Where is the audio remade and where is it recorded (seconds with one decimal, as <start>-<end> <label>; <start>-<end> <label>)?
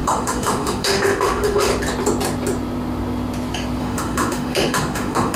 0.0-1.7 remade; 1.7-3.8 recorded; 3.8-5.4 remade